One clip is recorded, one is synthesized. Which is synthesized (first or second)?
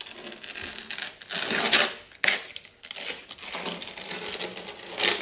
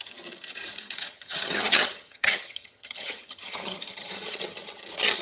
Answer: second